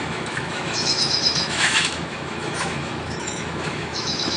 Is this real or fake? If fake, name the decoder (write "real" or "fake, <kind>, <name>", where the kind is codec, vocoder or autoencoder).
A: fake, autoencoder, DAC-VAE